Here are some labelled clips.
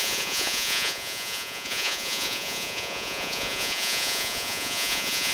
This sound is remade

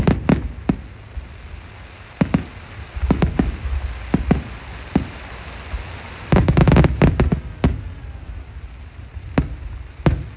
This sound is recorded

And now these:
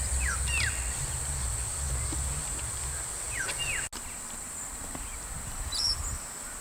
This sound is recorded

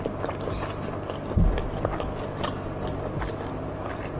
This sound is recorded